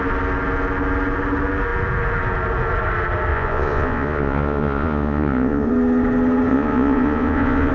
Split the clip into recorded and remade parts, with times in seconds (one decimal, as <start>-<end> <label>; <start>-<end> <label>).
0.0-3.3 recorded; 3.3-5.7 remade; 5.7-6.5 recorded; 6.5-7.7 remade